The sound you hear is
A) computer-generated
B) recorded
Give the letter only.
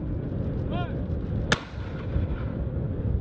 B